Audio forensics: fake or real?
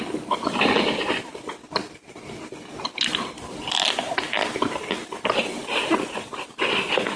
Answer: real